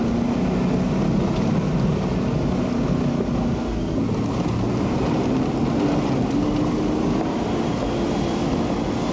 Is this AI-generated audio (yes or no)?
no